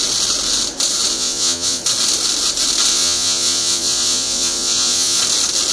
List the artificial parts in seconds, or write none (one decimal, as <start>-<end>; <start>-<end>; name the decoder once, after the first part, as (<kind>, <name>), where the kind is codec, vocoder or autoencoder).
1.1-1.8 (vocoder, Vocos); 2.9-5.2